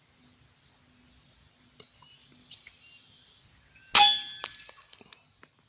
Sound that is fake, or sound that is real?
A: real